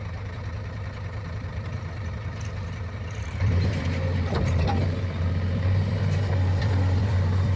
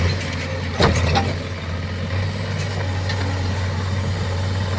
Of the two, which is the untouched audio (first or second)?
second